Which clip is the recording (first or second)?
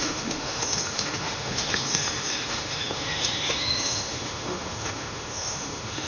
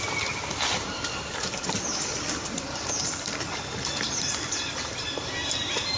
second